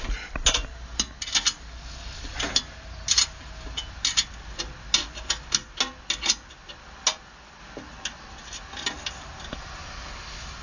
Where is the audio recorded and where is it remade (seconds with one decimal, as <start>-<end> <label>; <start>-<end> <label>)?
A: 0.0-10.6 recorded